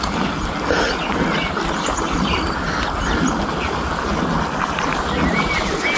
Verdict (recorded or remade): recorded